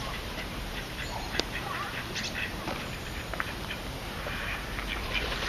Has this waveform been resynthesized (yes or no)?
yes